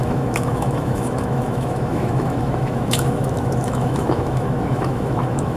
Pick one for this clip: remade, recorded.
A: remade